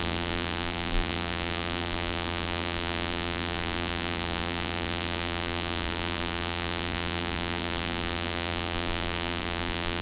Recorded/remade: remade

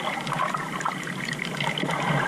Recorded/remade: recorded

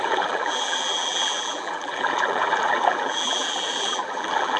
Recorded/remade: remade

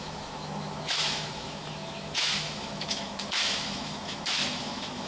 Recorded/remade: remade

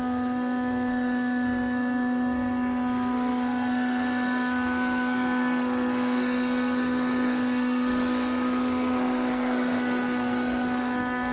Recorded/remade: remade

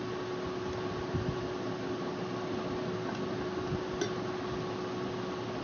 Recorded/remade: recorded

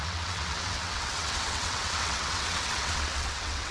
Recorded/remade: remade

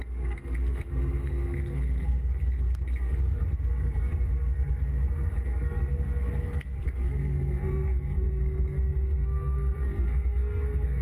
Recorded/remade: remade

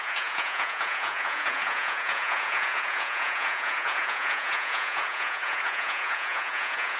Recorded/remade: remade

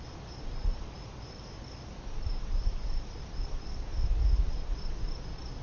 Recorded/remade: recorded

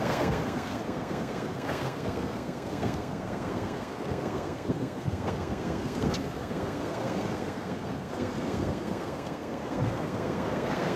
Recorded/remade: remade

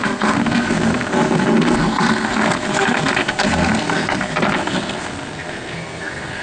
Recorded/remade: remade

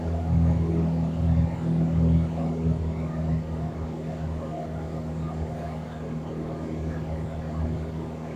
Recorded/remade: remade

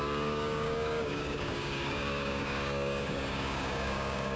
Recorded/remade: remade